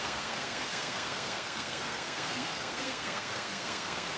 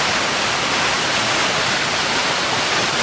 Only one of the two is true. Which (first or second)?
second